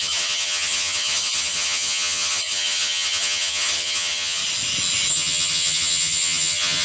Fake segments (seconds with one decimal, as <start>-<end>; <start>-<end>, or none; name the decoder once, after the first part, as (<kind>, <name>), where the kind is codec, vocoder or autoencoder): 0.0-4.4 (vocoder, HiFi-GAN); 5.1-6.8